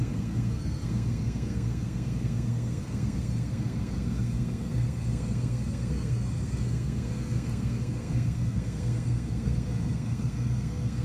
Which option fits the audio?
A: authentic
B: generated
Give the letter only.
B